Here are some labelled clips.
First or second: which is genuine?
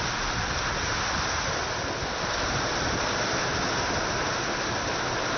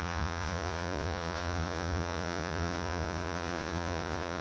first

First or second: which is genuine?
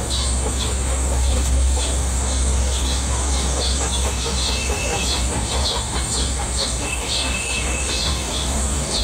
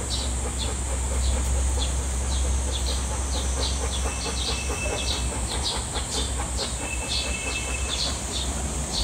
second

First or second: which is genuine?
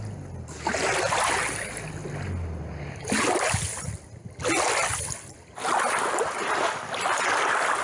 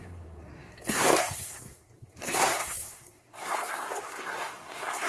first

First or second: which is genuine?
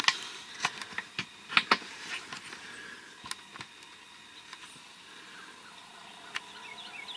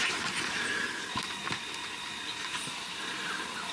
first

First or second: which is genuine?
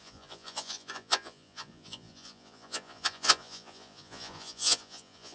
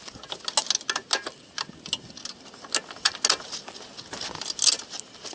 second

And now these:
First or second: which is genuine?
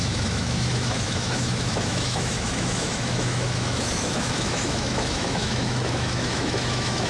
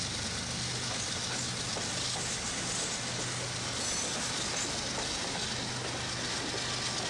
second